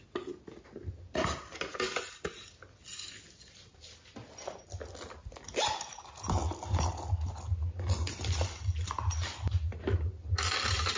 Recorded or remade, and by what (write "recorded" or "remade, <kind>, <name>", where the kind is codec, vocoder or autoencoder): recorded